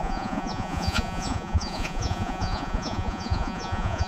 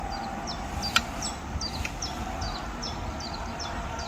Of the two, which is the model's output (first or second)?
first